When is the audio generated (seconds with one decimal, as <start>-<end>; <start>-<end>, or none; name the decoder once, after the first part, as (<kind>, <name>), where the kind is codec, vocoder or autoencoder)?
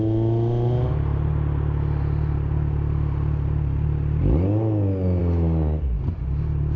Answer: none